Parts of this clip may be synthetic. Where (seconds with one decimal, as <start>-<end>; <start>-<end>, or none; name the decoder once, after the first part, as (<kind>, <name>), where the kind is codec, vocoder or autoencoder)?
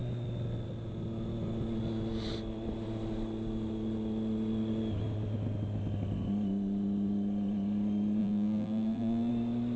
8.2-9.3 (vocoder, BigVGAN v2)